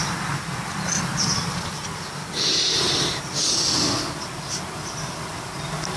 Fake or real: real